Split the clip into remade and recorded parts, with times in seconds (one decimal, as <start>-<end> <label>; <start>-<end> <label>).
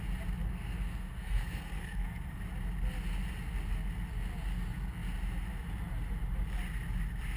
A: 0.0-0.5 recorded; 0.5-2.4 remade; 2.4-7.4 recorded